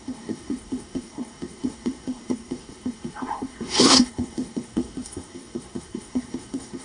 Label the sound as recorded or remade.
remade